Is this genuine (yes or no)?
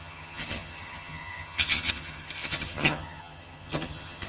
no